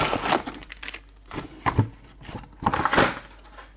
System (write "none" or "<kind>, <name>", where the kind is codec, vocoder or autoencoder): none